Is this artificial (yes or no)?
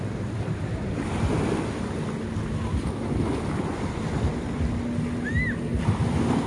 no